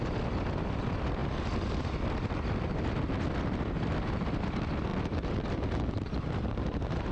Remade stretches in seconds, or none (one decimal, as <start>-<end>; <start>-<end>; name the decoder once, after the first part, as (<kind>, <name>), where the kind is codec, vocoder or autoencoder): 4.9-5.9 (vocoder, BigVGAN v2)